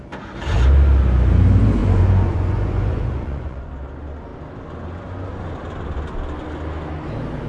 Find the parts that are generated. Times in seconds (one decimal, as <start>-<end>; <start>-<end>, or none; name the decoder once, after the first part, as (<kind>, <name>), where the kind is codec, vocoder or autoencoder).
1.8-3.7 (vocoder, Vocos)